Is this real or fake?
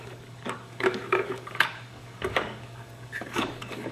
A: fake